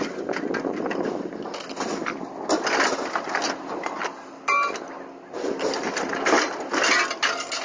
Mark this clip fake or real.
real